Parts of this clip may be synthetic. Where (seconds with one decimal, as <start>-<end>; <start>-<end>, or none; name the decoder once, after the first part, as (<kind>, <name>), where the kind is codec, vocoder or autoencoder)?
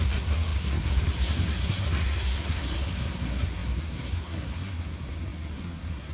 0.0-6.1 (codec, SNAC)